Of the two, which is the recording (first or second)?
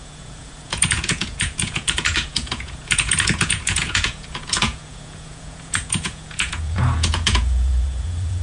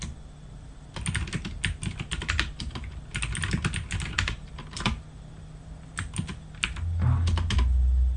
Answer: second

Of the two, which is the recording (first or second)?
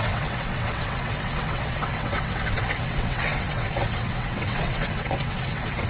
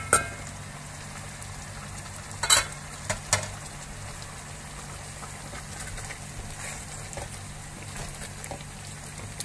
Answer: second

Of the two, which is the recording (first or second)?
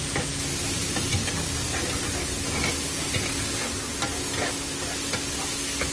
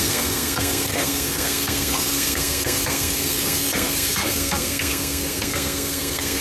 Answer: first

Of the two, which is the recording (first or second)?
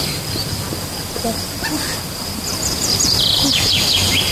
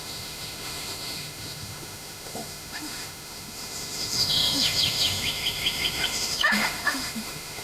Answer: first